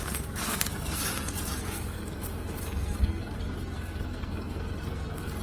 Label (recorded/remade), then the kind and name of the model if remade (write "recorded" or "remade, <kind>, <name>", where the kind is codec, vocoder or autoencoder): remade, codec, SNAC